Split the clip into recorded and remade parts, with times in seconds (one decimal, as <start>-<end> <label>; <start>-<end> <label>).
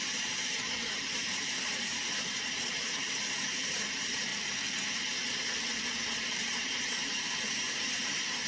0.0-4.3 remade; 4.3-5.6 recorded; 5.6-8.5 remade